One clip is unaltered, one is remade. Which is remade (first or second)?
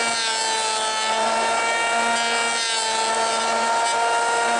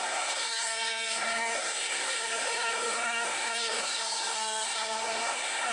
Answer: second